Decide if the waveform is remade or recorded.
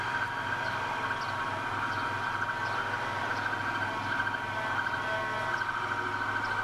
recorded